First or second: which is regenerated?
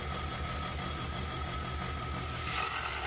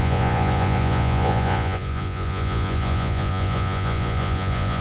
second